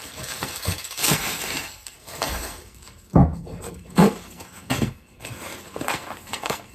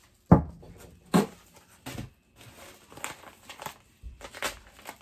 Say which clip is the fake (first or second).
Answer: first